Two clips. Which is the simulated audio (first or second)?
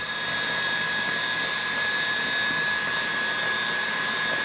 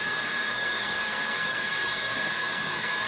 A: second